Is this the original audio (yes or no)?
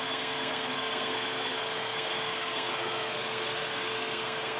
no